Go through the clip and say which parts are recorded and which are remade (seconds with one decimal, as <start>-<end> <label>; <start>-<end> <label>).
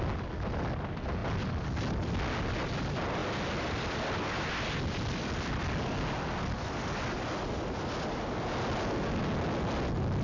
0.0-10.2 recorded